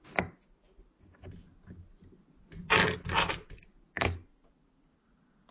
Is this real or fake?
real